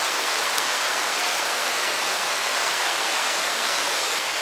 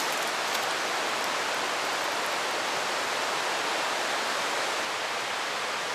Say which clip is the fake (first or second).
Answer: first